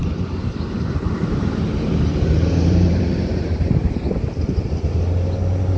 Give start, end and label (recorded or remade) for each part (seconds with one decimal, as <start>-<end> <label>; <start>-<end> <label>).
0.0-3.5 remade; 3.5-5.8 recorded